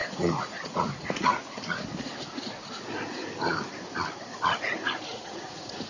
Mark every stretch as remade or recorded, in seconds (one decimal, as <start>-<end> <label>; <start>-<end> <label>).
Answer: 0.0-1.6 remade; 1.6-5.1 recorded; 5.1-5.9 remade